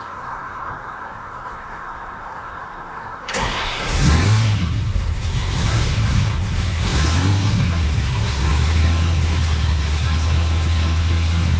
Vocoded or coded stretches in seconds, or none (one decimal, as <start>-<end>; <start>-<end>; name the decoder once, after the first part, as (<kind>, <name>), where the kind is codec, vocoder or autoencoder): 0.0-11.6 (codec, SNAC)